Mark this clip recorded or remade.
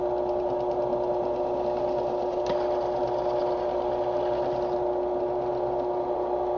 recorded